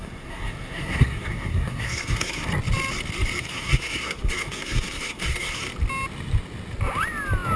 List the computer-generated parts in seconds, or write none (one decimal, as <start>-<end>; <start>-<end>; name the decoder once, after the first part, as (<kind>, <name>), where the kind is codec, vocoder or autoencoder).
0.0-2.5 (codec, SNAC); 3.4-5.6